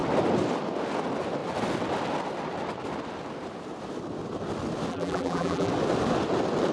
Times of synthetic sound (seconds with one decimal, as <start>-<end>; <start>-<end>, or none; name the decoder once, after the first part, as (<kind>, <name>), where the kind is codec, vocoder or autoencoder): 4.9-5.7 (vocoder, BigVGAN v2)